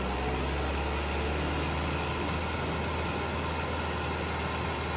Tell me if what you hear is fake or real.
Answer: real